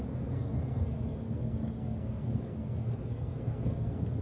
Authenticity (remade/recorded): remade